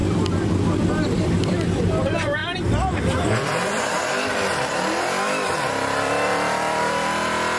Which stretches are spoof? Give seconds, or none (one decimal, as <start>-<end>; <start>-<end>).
0.8-7.6